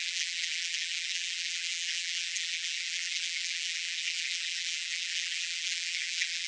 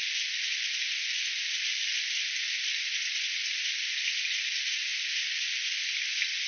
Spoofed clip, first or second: first